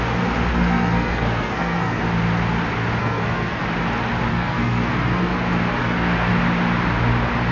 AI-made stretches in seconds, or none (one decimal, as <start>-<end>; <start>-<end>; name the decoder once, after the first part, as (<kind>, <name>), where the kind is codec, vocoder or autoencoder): 0.5-2.0 (codec, SNAC); 3.0-3.6; 4.3-5.3; 5.8-6.3